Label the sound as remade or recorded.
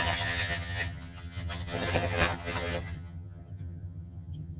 remade